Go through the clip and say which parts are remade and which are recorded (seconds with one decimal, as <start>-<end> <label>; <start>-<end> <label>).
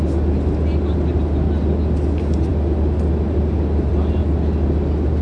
0.0-5.2 recorded